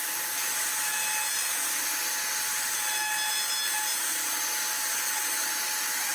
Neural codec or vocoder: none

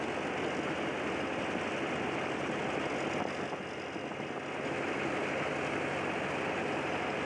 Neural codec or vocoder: none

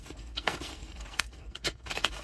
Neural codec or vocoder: codec, SNAC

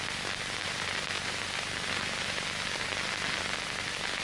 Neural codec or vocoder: none